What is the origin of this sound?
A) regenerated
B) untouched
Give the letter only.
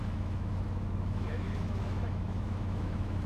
A